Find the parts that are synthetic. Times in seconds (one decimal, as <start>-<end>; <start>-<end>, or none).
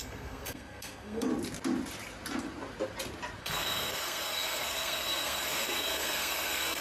0.0-1.3; 3.4-6.8